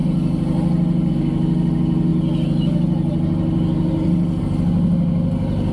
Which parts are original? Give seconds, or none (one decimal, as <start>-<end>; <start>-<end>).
0.0-5.7